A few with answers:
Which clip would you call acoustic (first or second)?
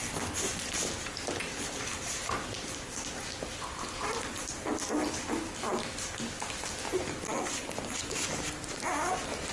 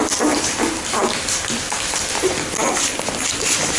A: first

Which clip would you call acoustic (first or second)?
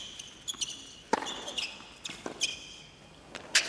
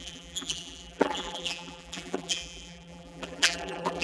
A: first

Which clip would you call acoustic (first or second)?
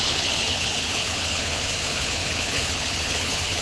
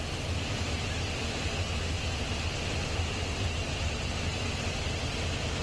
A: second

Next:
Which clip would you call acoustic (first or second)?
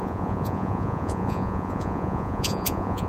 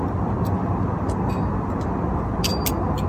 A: second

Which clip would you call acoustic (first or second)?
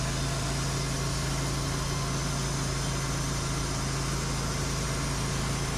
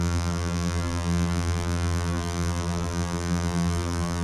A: first